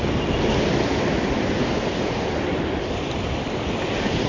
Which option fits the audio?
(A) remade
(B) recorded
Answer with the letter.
B